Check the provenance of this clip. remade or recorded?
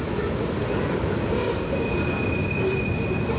recorded